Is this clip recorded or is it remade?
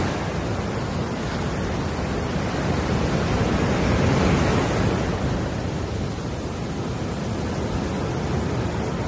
recorded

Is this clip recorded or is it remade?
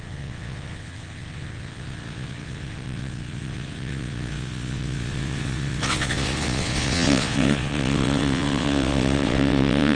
remade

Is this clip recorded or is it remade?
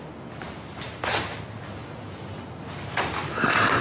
recorded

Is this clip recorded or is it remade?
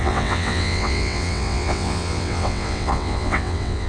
remade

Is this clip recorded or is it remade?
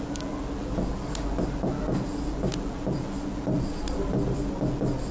recorded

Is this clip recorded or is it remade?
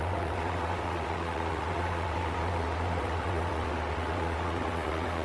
remade